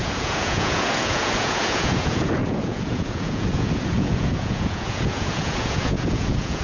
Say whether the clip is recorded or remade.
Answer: remade